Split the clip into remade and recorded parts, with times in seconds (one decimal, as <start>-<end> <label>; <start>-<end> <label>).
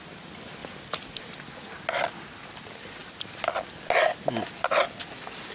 0.0-5.5 recorded